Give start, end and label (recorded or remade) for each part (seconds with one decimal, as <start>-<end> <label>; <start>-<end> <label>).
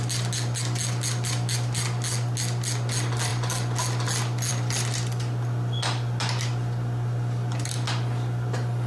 0.0-8.9 recorded